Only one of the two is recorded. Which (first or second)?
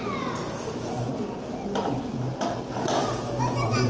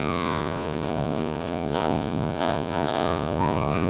first